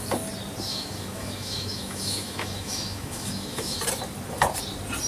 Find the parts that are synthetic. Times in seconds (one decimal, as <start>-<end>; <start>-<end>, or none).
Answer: 0.7-3.8